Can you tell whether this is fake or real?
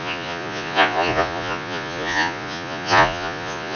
fake